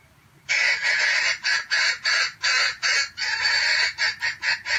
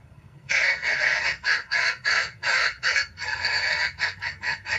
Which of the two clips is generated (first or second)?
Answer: second